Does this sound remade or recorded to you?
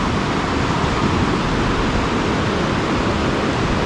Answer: recorded